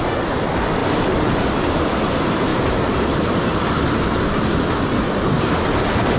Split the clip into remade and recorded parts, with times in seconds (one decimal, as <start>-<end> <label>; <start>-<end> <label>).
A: 0.0-0.8 recorded; 0.8-2.1 remade; 2.1-2.5 recorded; 2.5-3.6 remade; 3.6-6.2 recorded